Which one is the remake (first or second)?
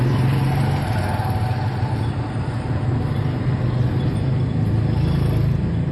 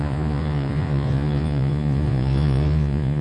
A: second